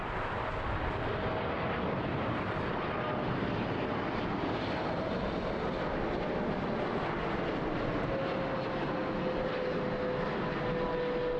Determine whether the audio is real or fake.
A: real